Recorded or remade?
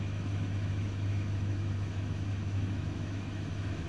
remade